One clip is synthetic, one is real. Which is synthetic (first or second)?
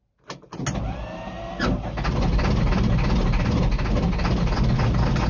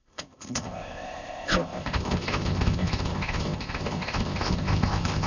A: second